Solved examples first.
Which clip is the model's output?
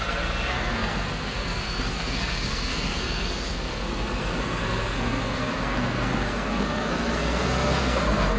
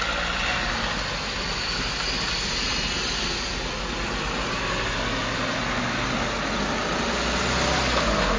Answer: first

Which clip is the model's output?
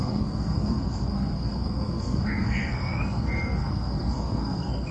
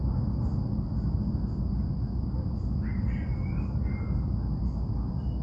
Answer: first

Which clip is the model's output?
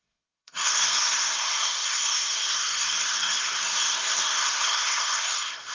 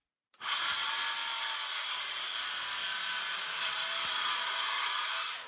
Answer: first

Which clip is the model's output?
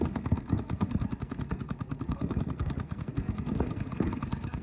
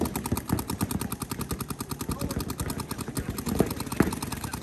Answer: first